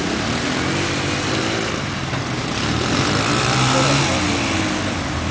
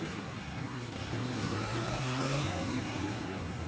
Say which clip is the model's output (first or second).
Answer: second